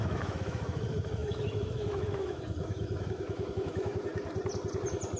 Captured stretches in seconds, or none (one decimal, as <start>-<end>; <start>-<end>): 4.1-5.2